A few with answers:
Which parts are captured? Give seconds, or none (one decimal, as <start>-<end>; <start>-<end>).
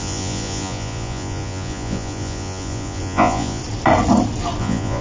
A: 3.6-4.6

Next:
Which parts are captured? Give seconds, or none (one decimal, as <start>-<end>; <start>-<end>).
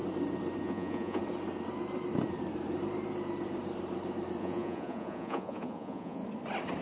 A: 0.0-0.6; 1.2-4.4; 6.2-6.8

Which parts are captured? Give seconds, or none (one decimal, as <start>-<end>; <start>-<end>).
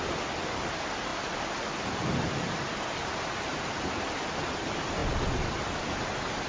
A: 0.0-1.1; 4.4-6.5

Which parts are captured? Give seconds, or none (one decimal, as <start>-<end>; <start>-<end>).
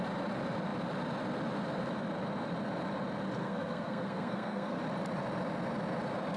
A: 0.0-3.4; 4.8-6.4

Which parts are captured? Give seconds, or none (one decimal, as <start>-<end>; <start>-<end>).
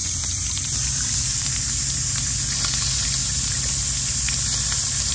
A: 1.5-5.1